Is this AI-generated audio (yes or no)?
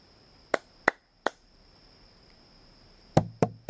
yes